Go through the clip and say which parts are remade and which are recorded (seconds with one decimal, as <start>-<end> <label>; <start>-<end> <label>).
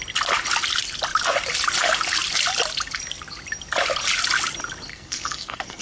0.0-4.9 recorded; 4.9-5.8 remade